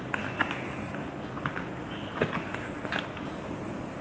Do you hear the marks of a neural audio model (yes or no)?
no